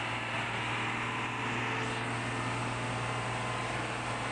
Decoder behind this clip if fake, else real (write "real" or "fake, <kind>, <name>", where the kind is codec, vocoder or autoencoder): real